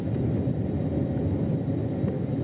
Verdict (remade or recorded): recorded